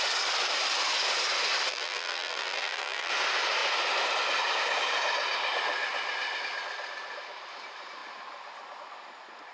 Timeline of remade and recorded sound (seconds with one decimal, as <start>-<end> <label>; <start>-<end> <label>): 0.0-1.7 recorded; 1.7-3.1 remade; 3.1-9.5 recorded